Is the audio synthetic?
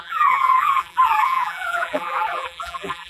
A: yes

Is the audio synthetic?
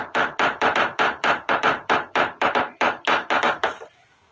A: yes